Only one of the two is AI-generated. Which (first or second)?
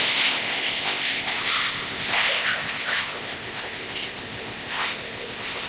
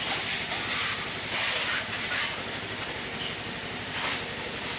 first